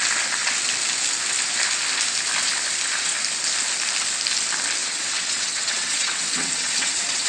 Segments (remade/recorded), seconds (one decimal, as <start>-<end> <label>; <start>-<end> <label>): 0.0-4.8 recorded; 4.8-7.3 remade